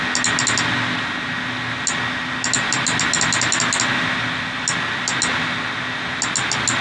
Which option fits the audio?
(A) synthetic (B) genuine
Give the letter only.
B